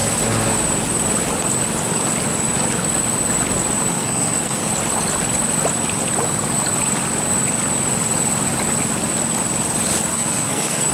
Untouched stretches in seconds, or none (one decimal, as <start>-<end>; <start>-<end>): 0.0-3.9; 4.7-10.1